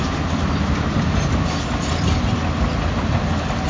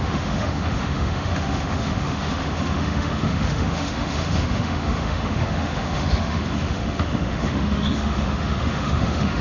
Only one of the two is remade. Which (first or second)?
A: second